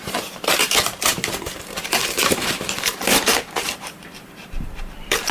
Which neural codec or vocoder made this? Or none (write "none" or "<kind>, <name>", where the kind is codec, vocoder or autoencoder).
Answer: vocoder, BigVGAN v2